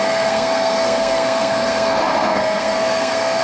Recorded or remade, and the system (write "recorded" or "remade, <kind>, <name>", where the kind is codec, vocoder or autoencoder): remade, codec, SNAC